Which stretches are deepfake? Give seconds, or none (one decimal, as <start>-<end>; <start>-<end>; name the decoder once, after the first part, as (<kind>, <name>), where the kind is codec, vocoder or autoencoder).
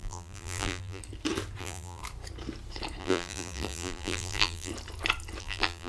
0.0-1.0 (vocoder, BigVGAN v2); 1.6-2.0; 3.0-4.7; 5.4-5.9